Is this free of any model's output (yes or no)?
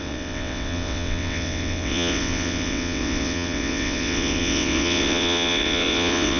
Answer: no